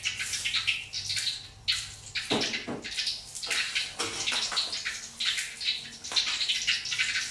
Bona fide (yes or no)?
yes